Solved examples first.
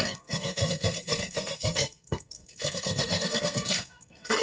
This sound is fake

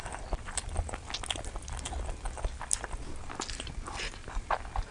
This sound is real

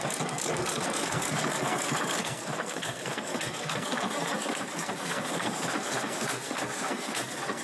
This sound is fake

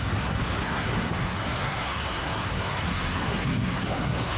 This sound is fake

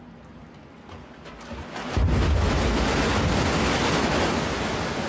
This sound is real